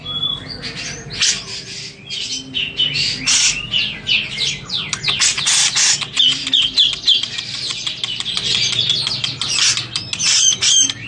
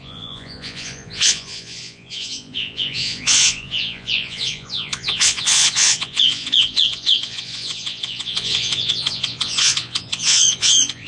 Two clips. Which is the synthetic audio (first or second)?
second